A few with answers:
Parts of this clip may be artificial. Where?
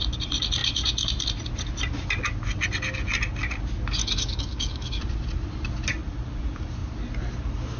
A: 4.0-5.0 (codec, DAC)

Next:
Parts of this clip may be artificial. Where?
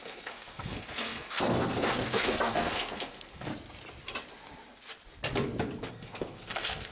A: 0.0-3.5 (codec, SNAC); 5.9-6.9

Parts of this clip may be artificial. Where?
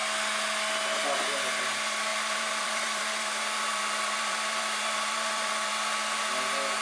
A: 2.1-5.7 (vocoder, BigVGAN v2)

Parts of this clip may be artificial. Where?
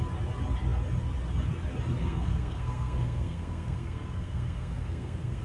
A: 2.0-5.4 (codec, SNAC)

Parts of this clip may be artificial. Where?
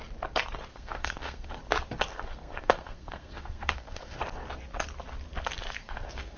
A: 0.7-1.6 (codec, SNAC); 2.1-4.2; 5.8-6.4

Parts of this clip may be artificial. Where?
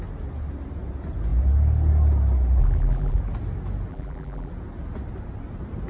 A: 2.6-3.2 (vocoder, BigVGAN v2); 3.9-4.5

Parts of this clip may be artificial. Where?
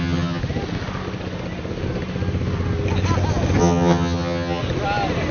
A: 0.0-0.4 (vocoder, HiFi-GAN); 3.6-4.6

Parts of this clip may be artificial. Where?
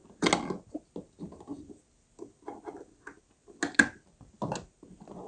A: none